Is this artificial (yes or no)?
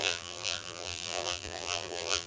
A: yes